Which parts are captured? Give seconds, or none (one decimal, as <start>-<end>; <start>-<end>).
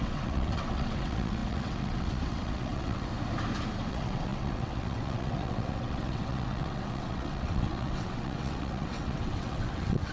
3.1-3.9